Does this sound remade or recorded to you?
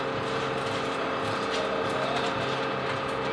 recorded